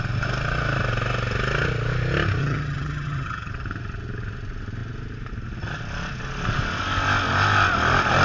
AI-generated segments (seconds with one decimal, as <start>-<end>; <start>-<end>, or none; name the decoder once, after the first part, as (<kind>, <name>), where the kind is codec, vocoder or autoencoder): 2.4-3.5 (vocoder, HiFi-GAN)

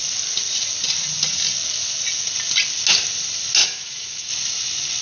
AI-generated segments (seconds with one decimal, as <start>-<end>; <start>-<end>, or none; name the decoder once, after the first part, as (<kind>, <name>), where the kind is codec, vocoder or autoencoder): 3.6-4.3 (autoencoder, DAC-VAE)